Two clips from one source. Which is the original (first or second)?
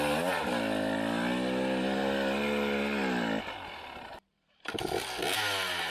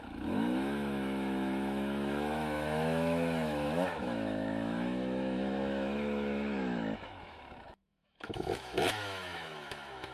first